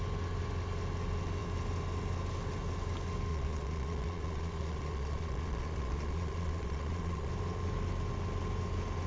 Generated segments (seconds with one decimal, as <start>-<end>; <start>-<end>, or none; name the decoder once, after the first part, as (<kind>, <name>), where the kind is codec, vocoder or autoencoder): 3.3-7.3 (vocoder, Vocos)